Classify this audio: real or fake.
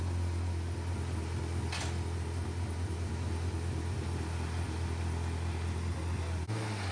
real